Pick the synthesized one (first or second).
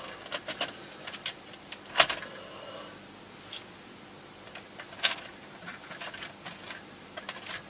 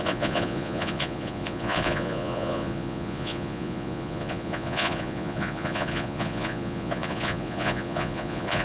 second